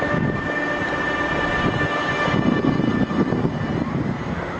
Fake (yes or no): no